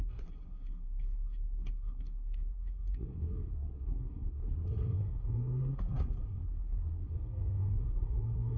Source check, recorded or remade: remade